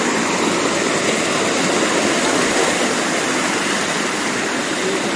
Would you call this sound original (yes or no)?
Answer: yes